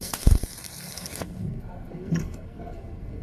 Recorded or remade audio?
remade